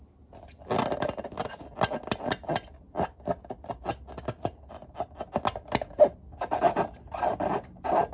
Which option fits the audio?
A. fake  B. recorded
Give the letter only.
B